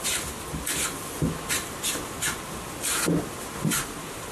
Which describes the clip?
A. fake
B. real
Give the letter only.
B